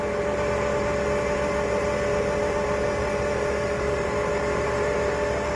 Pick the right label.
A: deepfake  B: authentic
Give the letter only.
B